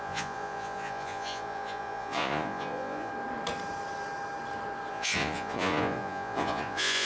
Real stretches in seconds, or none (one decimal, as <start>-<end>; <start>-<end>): 3.1-4.9